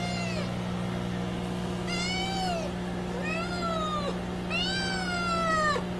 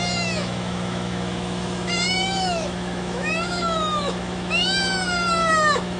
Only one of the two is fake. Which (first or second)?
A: second